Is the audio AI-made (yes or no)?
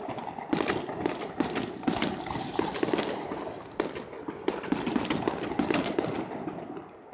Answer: no